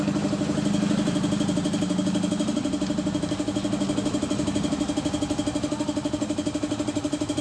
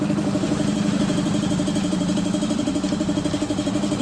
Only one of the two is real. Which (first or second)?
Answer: first